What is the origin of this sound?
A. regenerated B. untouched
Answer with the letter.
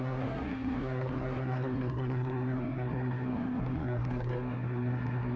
A